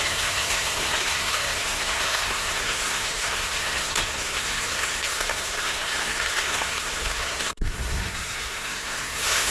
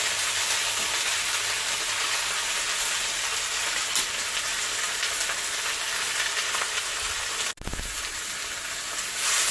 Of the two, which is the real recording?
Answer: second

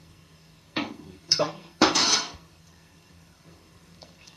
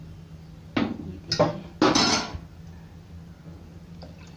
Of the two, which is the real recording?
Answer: second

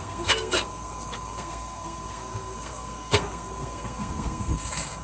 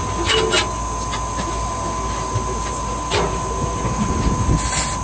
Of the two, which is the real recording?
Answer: second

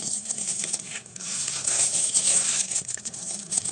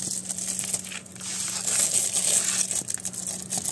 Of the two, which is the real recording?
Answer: second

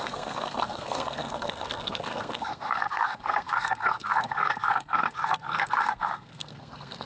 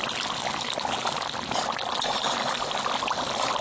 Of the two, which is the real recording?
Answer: second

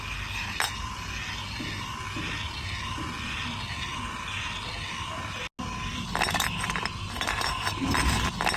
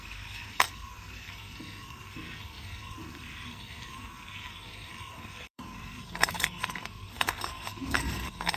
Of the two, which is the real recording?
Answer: first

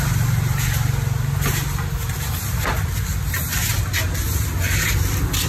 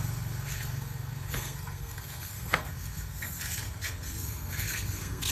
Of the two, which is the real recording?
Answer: first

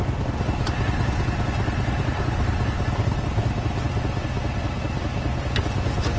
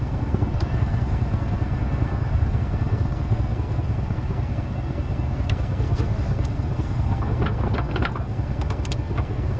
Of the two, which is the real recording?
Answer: first